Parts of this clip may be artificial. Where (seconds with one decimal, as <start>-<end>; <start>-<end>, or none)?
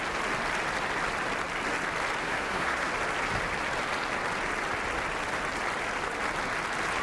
2.2-2.9